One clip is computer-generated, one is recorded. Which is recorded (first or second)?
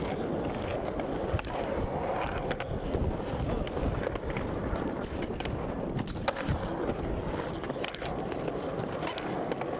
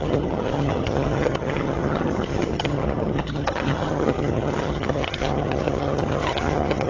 first